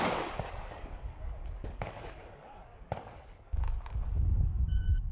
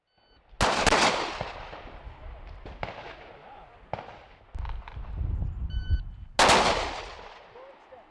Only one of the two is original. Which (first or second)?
second